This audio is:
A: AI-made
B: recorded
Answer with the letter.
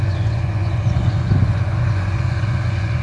A